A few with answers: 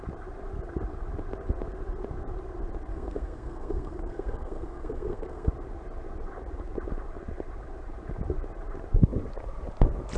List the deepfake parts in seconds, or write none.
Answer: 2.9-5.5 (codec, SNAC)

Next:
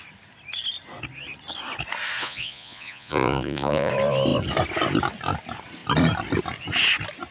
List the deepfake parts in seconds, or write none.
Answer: 2.2-3.9 (vocoder, Vocos)